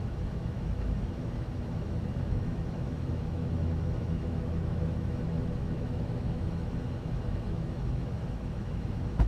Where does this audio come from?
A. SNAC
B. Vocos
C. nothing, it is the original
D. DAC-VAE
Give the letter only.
D